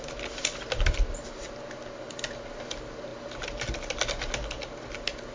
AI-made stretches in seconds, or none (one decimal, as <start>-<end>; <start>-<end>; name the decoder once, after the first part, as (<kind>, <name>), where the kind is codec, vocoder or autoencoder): none